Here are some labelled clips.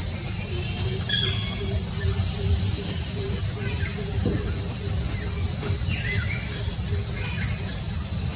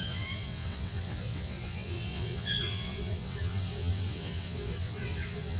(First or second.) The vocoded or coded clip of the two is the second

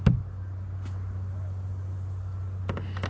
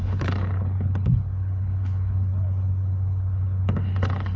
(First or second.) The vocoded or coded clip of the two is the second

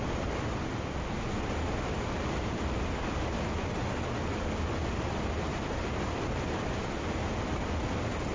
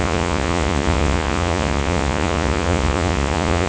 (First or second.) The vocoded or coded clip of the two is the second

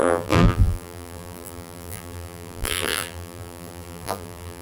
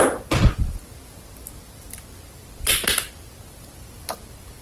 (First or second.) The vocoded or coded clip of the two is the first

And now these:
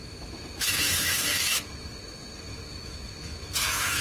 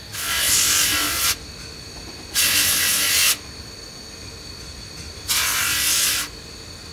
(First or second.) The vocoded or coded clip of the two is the first